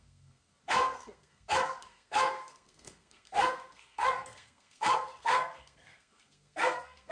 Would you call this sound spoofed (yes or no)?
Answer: yes